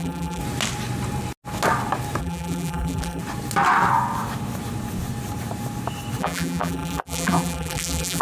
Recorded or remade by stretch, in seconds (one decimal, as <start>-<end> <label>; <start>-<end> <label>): 0.0-0.4 remade; 0.4-2.2 recorded; 2.2-3.2 remade; 3.2-6.2 recorded; 6.2-8.2 remade